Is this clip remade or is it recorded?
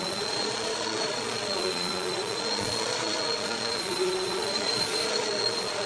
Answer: remade